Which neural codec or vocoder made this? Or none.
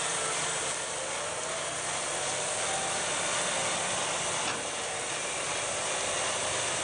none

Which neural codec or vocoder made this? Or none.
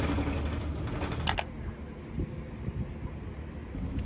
none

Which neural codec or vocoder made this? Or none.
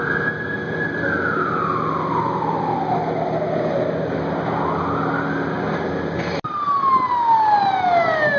none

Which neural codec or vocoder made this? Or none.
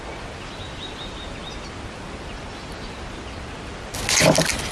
none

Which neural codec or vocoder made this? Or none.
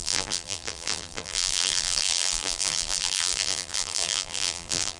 vocoder, BigVGAN v2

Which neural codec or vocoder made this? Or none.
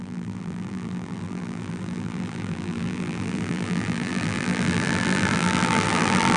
vocoder, BigVGAN v2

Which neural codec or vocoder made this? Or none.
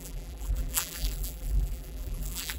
vocoder, BigVGAN v2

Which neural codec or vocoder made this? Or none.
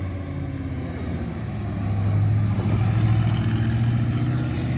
none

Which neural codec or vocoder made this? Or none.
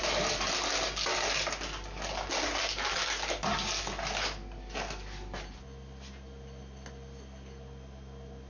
none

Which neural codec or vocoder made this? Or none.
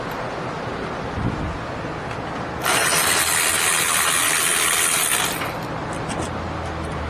none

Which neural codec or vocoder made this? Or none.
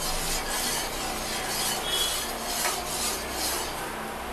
none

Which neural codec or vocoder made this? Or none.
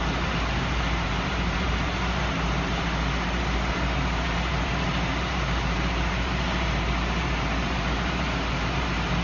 vocoder, BigVGAN v2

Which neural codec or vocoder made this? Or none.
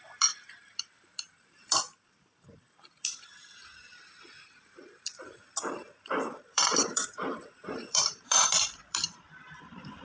vocoder, BigVGAN v2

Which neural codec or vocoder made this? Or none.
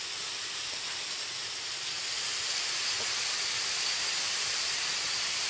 vocoder, BigVGAN v2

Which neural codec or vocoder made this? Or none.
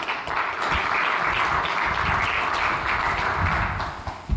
none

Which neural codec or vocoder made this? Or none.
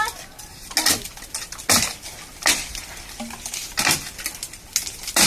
none